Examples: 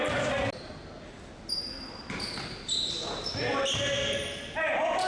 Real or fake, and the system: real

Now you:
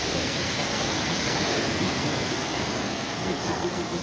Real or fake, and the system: fake, codec, SNAC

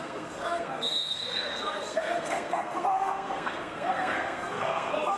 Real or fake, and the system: fake, codec, SNAC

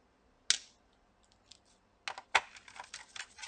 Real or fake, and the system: real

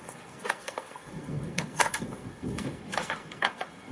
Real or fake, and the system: fake, codec, SNAC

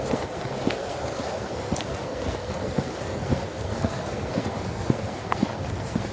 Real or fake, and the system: fake, codec, SNAC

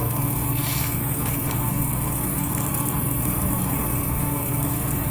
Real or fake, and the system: fake, codec, SNAC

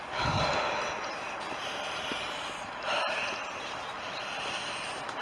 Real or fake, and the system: real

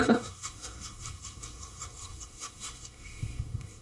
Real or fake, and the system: fake, codec, SNAC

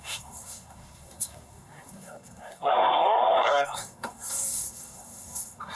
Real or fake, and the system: fake, codec, SNAC